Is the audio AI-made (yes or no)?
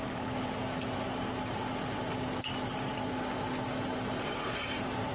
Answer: no